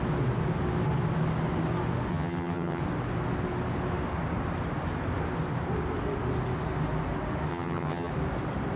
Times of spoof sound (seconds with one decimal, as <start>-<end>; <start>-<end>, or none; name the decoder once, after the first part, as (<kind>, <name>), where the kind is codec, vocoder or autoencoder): 2.1-2.8 (vocoder, HiFi-GAN); 7.5-8.1